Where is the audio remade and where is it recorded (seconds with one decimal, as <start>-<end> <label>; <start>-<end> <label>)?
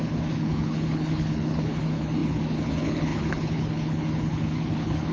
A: 0.0-5.1 remade